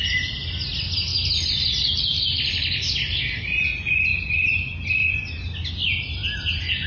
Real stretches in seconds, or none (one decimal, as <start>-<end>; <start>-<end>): 0.0-6.9